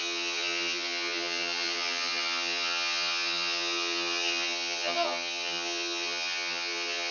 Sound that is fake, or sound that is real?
fake